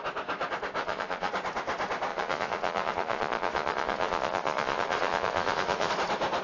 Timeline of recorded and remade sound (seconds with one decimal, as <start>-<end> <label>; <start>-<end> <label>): 0.0-0.8 recorded; 0.8-1.3 remade; 1.3-2.1 recorded; 2.1-5.9 remade; 5.9-6.4 recorded